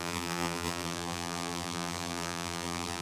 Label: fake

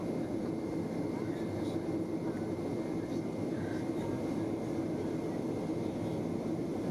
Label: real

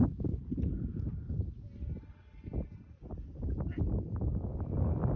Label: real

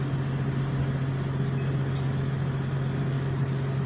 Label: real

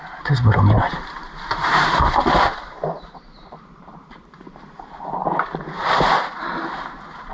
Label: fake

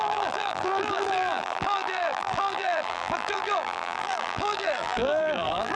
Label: fake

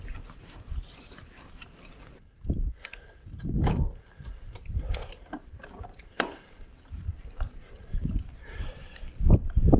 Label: fake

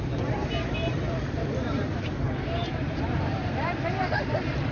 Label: fake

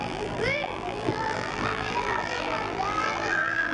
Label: fake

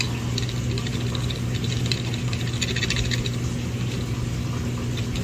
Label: real